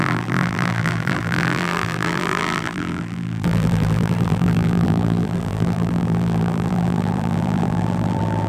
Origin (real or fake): fake